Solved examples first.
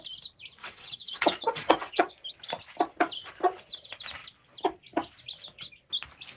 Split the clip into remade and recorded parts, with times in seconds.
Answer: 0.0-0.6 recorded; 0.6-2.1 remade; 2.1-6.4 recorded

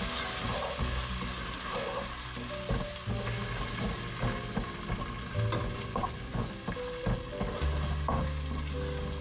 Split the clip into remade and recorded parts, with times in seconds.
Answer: 0.0-5.7 recorded; 5.7-6.5 remade; 6.5-9.2 recorded

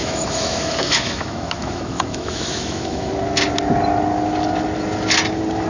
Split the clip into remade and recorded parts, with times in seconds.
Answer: 0.0-3.1 remade; 3.1-5.7 recorded

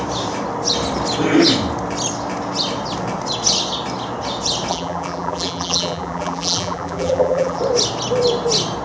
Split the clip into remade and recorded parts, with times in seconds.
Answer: 0.0-4.7 recorded; 4.7-7.6 remade; 7.6-8.8 recorded

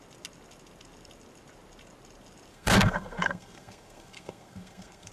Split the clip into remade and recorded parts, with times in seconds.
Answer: 0.0-2.5 recorded; 2.5-5.1 remade

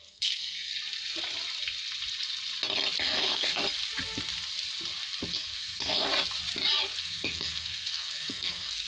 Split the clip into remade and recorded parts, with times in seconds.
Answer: 0.0-0.7 remade; 0.7-3.0 recorded; 3.0-3.6 remade; 3.6-5.3 recorded; 5.3-6.1 remade; 6.1-7.0 recorded; 7.0-8.9 remade

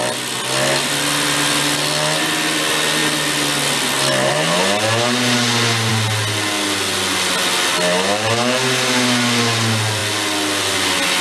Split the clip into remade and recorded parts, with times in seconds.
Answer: 0.0-11.2 recorded

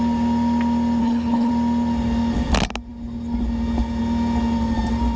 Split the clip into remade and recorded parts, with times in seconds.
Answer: 0.0-1.0 recorded; 1.0-1.5 remade; 1.5-5.2 recorded